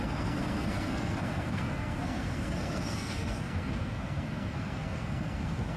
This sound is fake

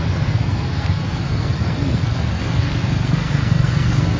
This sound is fake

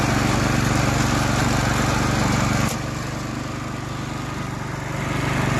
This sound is real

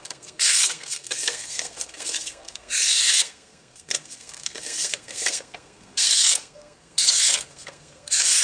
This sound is fake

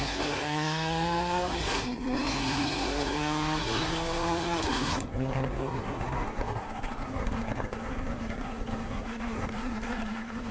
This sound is fake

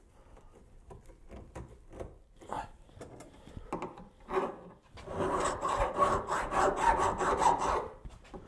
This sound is real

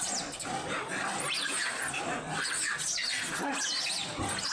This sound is real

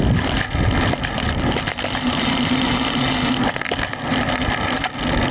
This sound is real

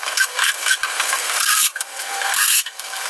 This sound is fake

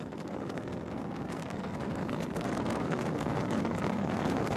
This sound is fake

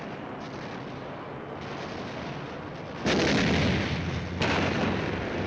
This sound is real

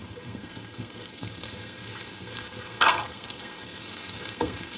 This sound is fake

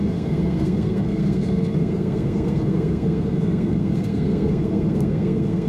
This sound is fake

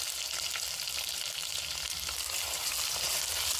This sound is real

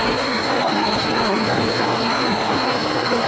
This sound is fake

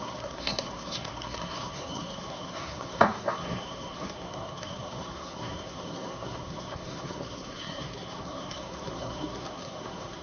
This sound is fake